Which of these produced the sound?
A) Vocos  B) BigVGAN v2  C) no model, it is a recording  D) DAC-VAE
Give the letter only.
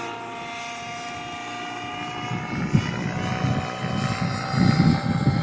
C